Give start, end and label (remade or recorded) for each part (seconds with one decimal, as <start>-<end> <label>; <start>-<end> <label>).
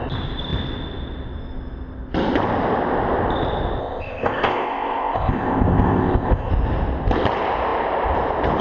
0.0-3.8 recorded; 3.8-6.5 remade; 6.5-8.6 recorded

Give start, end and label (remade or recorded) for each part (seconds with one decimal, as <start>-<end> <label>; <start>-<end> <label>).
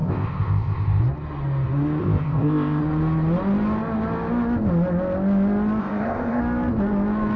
0.0-1.0 remade; 1.0-2.0 recorded; 2.0-2.8 remade; 2.8-5.8 recorded; 5.8-6.4 remade; 6.4-7.4 recorded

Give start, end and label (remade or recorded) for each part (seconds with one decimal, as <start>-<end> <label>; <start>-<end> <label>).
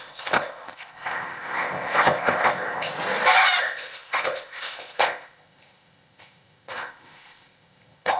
0.0-2.9 remade; 2.9-3.6 recorded; 3.6-8.2 remade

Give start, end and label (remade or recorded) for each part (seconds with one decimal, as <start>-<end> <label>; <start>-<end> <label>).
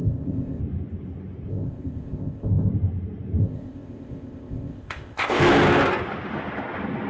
0.0-0.6 remade; 0.6-1.5 recorded; 1.5-2.7 remade; 2.7-3.4 recorded; 3.4-5.4 remade; 5.4-7.1 recorded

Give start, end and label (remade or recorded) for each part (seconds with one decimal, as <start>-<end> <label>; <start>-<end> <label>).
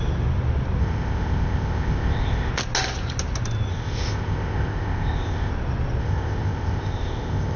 0.0-0.8 recorded; 0.8-2.5 remade; 2.5-3.7 recorded; 3.7-5.5 remade; 5.5-6.0 recorded; 6.0-7.6 remade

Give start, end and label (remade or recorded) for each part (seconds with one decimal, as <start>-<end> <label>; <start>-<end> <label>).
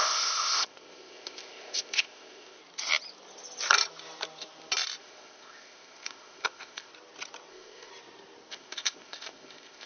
0.0-2.6 remade; 2.6-5.0 recorded; 5.0-6.9 remade; 6.9-7.5 recorded; 7.5-7.9 remade; 7.9-8.5 recorded; 8.5-9.9 remade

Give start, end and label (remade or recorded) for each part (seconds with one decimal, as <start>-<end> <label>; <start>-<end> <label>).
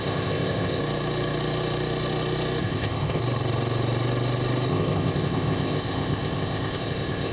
0.0-0.8 remade; 0.8-2.6 recorded; 2.6-3.2 remade; 3.2-4.7 recorded; 4.7-7.3 remade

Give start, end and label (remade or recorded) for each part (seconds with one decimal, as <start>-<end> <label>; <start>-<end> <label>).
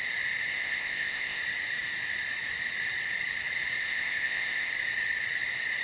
0.0-0.5 recorded; 0.5-1.4 remade; 1.4-3.8 recorded; 3.8-4.7 remade; 4.7-5.8 recorded